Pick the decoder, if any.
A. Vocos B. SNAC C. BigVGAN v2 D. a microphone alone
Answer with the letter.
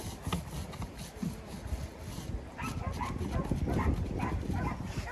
D